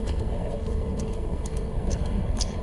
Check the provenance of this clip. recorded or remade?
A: remade